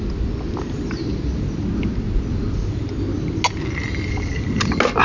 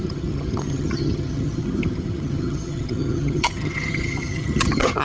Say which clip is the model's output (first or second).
second